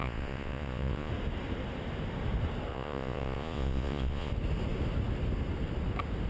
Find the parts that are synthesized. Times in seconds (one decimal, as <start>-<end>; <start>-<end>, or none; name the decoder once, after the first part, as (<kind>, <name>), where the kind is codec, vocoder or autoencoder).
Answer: 0.0-1.1 (vocoder, Vocos); 2.7-4.3